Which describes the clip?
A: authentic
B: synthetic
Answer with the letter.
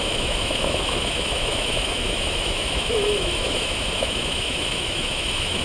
B